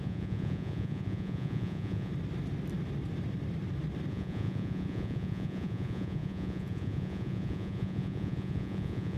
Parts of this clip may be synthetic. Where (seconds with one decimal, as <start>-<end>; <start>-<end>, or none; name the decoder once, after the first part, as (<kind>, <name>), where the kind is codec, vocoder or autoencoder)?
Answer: 0.0-2.1 (vocoder, Vocos); 4.1-9.2